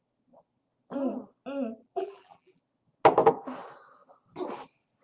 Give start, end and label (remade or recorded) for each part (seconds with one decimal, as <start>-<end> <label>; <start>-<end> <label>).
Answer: 0.0-1.8 recorded; 1.8-2.6 remade; 2.6-5.0 recorded